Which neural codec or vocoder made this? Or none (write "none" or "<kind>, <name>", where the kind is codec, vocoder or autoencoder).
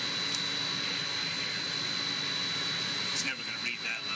none